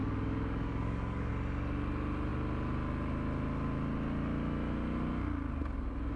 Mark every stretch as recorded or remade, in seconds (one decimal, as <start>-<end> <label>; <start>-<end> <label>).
0.0-1.3 remade; 1.3-6.2 recorded